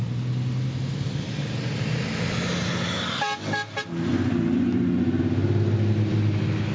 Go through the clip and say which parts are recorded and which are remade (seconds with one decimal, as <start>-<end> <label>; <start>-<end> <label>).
0.0-6.7 recorded